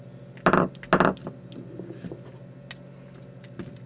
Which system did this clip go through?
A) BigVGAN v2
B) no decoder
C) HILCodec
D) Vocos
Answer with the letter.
B